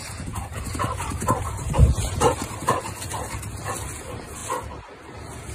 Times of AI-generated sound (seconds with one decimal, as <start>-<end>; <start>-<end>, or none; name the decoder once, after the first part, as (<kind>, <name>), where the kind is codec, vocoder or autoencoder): 0.0-3.3 (vocoder, BigVGAN v2)